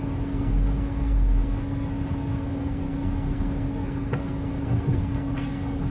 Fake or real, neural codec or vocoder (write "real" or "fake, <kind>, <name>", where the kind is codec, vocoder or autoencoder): fake, codec, SNAC